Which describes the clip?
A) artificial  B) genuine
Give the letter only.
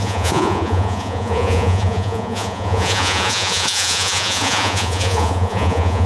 A